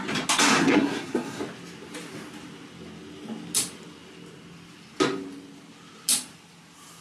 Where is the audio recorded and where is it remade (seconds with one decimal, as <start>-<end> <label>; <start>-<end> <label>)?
0.0-0.6 recorded; 0.6-1.4 remade; 1.4-7.0 recorded